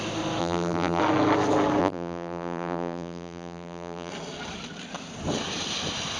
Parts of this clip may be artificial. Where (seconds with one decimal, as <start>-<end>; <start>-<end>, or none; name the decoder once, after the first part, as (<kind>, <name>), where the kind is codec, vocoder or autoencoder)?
0.4-1.0 (vocoder, BigVGAN v2); 1.8-4.1